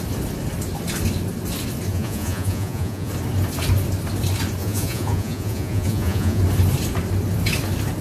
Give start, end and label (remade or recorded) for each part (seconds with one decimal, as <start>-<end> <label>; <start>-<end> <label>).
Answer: 0.0-1.9 recorded; 1.9-3.1 remade; 3.1-4.6 recorded; 4.6-6.4 remade; 6.4-8.0 recorded